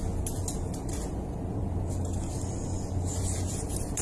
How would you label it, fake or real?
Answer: real